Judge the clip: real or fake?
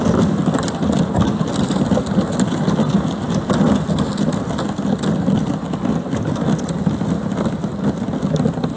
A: real